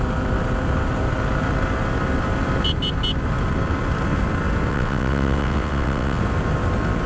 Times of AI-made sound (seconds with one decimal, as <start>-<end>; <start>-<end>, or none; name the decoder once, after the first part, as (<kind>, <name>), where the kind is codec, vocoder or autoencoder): 4.7-6.2 (vocoder, WaveNeXt)